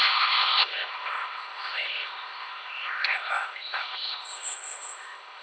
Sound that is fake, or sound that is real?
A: fake